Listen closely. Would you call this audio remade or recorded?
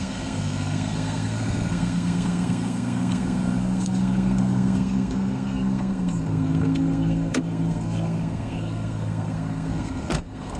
remade